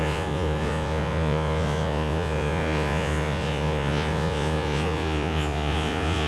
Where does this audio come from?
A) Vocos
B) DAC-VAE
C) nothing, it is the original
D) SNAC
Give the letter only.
A